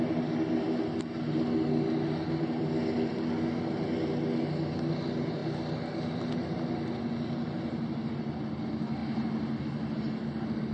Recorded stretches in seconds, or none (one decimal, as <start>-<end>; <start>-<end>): 0.0-10.7